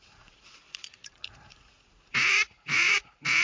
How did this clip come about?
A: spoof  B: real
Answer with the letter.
A